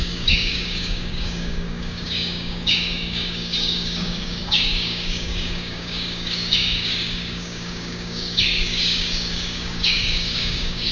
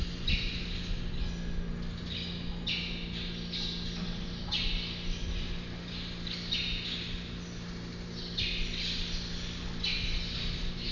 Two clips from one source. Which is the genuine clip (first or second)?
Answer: second